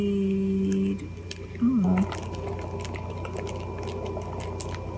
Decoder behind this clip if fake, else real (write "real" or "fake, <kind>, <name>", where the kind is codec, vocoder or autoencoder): real